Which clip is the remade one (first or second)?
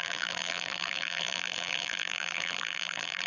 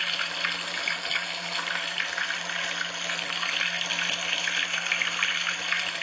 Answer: first